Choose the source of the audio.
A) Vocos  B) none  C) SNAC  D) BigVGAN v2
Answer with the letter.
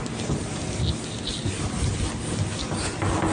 B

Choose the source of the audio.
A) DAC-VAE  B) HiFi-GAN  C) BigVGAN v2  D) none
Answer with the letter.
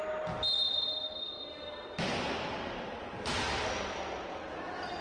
D